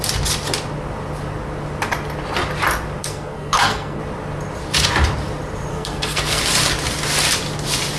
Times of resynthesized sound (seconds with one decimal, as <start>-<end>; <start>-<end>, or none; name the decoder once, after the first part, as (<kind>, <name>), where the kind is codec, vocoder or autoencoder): 3.0-4.0 (codec, SNAC); 5.7-6.4